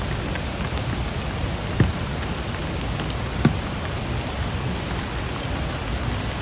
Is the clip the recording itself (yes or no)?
yes